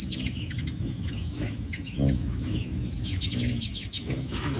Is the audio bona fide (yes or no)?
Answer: no